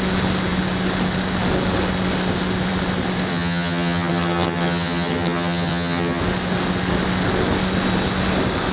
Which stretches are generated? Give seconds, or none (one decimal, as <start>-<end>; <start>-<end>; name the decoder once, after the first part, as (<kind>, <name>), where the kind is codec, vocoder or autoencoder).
3.3-6.2 (vocoder, HiFi-GAN)